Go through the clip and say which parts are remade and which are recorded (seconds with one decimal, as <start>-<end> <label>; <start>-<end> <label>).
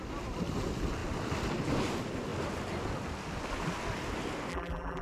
0.0-4.5 recorded; 4.5-5.0 remade